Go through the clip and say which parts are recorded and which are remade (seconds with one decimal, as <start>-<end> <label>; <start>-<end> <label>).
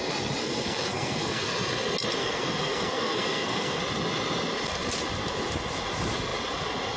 0.0-0.4 recorded; 0.4-1.5 remade; 1.5-2.2 recorded; 2.2-3.8 remade; 3.8-7.0 recorded